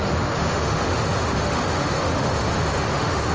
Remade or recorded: remade